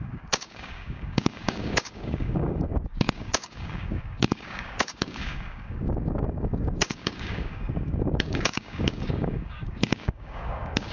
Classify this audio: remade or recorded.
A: remade